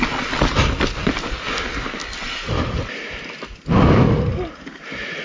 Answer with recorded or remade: recorded